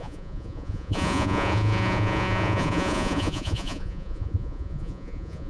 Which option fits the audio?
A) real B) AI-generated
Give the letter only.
B